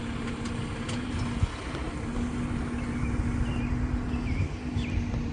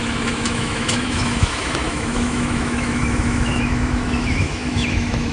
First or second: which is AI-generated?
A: second